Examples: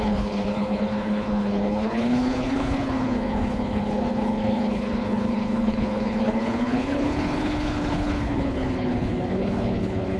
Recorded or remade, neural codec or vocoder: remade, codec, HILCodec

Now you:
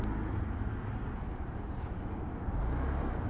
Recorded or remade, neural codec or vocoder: recorded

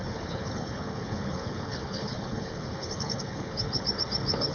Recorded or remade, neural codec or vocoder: remade, codec, HILCodec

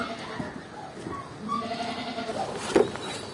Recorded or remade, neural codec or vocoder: recorded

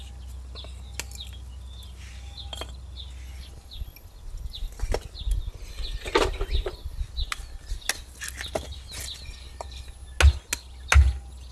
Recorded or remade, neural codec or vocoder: recorded